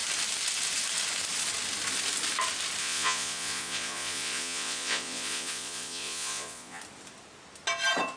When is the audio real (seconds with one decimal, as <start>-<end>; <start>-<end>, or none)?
0.0-2.8; 6.8-8.2